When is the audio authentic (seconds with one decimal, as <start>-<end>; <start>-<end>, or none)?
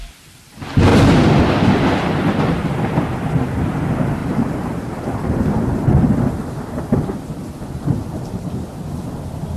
0.0-0.9; 2.7-4.2; 6.3-9.6